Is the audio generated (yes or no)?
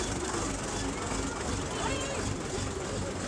no